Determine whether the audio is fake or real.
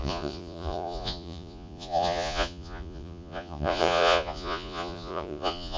fake